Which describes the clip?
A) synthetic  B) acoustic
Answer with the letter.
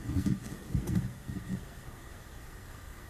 A